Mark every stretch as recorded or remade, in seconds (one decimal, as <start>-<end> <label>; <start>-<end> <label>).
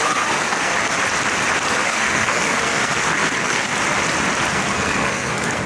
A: 0.0-0.7 remade; 0.7-1.8 recorded; 1.8-3.7 remade; 3.7-4.5 recorded; 4.5-5.7 remade